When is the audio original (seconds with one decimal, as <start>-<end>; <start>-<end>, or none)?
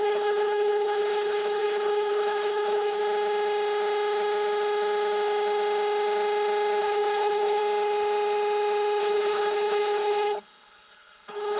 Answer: 3.0-6.8; 7.6-9.0